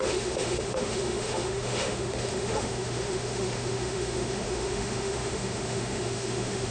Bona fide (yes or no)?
no